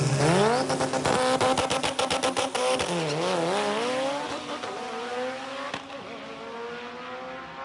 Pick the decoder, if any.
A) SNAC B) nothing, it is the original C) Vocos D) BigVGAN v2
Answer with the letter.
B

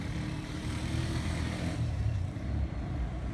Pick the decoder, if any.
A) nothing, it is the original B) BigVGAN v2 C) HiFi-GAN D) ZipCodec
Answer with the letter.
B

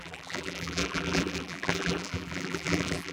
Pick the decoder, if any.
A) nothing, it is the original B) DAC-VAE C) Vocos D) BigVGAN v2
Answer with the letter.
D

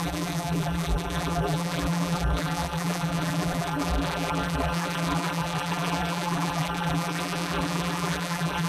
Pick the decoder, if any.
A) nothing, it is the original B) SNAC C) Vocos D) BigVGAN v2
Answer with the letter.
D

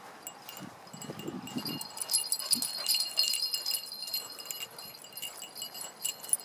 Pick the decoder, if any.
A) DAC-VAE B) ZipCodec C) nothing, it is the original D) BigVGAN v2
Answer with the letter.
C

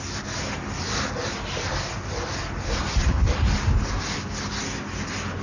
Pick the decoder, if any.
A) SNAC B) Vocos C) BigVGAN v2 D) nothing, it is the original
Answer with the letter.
D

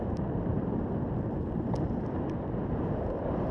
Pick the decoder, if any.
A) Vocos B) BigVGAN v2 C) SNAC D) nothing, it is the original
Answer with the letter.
B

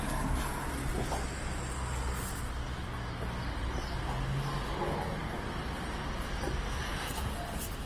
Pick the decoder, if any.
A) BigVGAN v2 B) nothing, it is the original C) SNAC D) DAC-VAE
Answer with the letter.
B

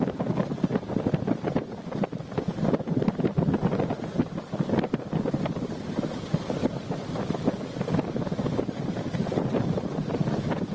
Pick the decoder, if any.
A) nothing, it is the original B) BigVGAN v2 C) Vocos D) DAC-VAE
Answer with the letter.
A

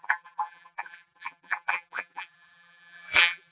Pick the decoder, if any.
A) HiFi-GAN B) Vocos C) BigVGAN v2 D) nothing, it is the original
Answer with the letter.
C